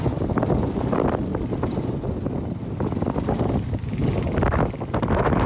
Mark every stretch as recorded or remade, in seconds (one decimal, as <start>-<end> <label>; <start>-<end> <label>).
0.0-5.5 recorded